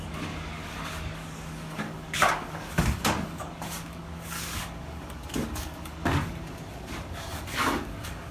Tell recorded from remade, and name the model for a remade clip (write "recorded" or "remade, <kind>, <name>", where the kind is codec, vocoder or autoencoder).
remade, codec, DAC